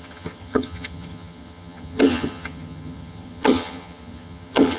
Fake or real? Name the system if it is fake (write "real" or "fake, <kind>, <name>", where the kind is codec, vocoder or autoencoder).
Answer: fake, vocoder, HiFi-GAN